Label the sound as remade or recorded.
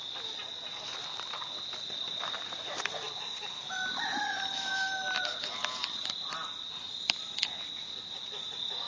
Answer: recorded